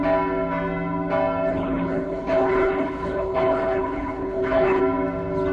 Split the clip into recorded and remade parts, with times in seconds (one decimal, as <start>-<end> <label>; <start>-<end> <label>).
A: 0.0-1.5 recorded; 1.5-4.8 remade; 4.8-5.5 recorded